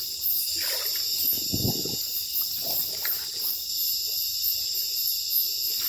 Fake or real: real